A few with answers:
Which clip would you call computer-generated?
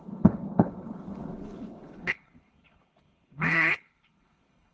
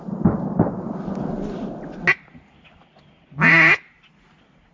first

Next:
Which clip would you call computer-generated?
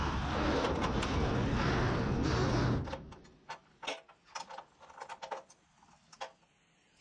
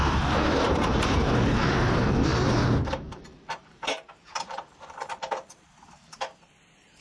second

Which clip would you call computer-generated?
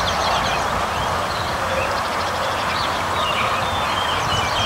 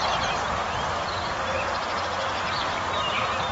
first